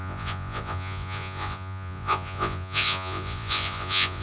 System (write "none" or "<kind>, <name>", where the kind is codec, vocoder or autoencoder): vocoder, Vocos